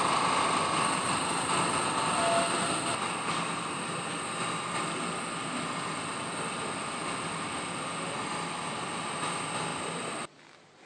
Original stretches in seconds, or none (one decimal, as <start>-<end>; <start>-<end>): 0.0-10.9